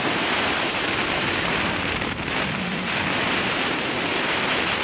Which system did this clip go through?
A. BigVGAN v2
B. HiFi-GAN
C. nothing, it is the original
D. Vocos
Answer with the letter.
A